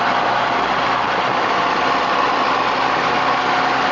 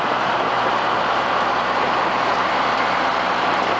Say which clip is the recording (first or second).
first